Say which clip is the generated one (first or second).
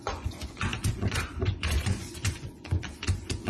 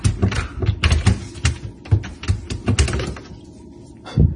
first